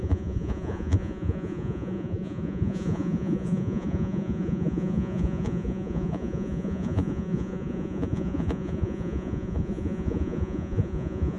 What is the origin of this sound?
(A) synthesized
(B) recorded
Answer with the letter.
A